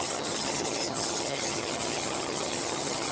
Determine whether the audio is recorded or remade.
remade